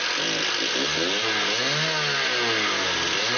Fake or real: real